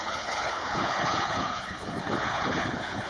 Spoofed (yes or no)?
yes